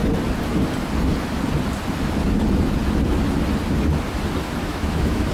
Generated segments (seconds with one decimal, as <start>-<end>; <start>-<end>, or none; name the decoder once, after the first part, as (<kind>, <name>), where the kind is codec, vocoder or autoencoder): 4.6-5.3 (autoencoder, DAC-VAE)